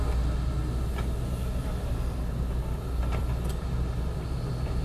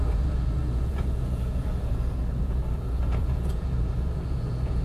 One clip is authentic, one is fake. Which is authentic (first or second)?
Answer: first